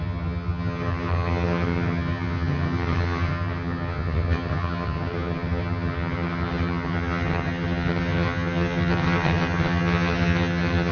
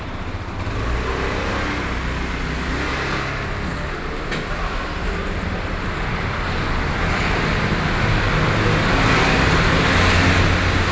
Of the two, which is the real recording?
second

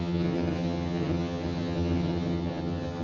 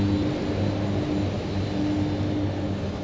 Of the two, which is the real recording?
second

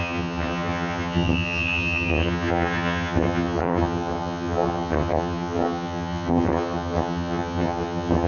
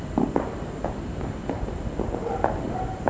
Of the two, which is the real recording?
second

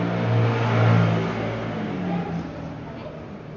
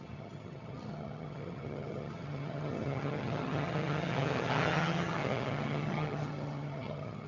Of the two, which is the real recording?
first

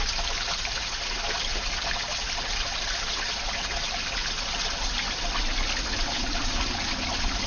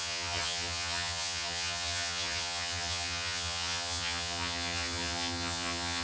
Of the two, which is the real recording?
first